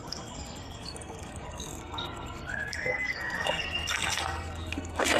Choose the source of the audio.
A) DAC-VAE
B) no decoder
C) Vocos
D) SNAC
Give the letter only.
D